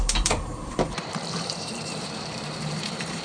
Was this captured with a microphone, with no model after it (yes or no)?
no